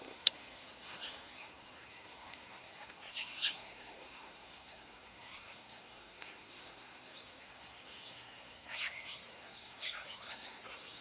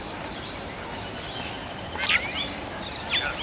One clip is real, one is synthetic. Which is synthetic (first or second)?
first